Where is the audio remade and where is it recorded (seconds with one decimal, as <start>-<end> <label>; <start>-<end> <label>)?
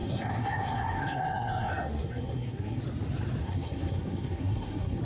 0.0-2.8 remade; 2.8-3.4 recorded; 3.4-5.0 remade